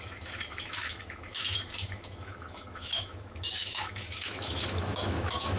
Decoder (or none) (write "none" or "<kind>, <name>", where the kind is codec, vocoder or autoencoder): autoencoder, DAC-VAE